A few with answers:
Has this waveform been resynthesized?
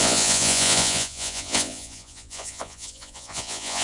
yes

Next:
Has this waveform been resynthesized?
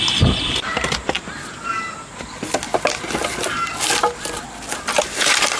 no